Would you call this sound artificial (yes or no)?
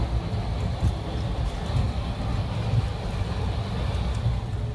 no